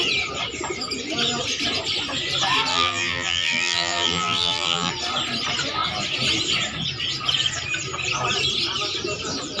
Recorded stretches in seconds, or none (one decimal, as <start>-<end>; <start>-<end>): 0.0-2.7; 4.9-9.6